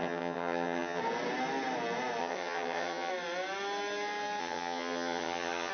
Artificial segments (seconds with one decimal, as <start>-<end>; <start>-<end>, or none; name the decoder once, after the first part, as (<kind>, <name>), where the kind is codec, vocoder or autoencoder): 0.0-1.0 (vocoder, HiFi-GAN); 2.2-3.1; 4.4-5.7